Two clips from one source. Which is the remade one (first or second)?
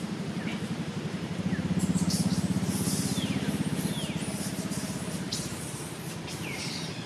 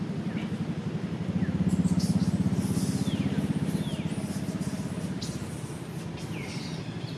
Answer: first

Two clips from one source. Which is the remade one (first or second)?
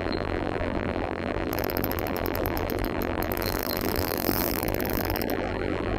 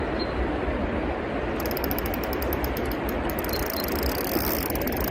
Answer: first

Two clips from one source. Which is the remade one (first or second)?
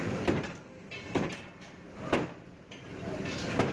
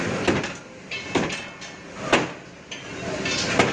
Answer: first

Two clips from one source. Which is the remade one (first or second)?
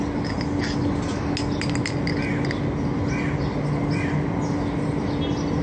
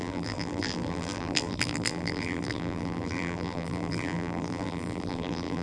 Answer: second